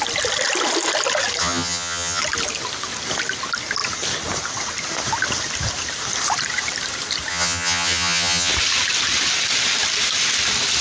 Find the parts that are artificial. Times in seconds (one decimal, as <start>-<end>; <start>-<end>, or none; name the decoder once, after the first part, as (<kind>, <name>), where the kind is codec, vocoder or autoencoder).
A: 1.4-2.2 (vocoder, HiFi-GAN); 7.3-8.5